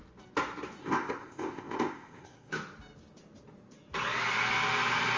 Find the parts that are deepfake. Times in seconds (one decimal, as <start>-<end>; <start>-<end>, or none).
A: 0.8-2.5